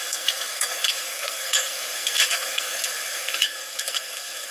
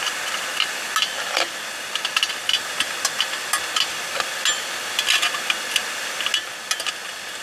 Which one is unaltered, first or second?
second